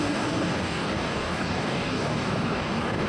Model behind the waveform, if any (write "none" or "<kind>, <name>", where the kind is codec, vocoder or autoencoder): codec, DAC